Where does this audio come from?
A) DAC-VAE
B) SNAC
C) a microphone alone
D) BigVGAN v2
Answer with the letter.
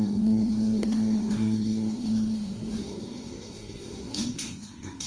B